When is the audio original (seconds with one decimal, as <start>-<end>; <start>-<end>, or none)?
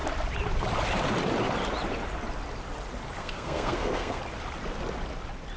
0.0-3.2; 4.2-5.6